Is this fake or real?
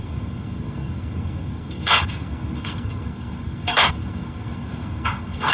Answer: fake